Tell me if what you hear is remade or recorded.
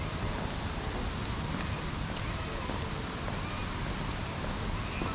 recorded